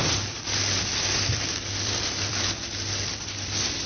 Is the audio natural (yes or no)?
no